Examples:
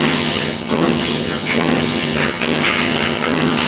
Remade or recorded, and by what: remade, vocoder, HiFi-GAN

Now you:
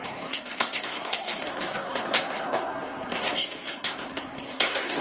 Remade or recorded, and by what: remade, codec, SNAC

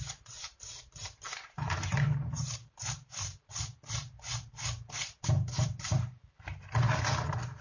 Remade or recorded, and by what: remade, vocoder, BigVGAN v2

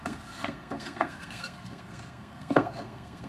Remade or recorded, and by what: remade, codec, SNAC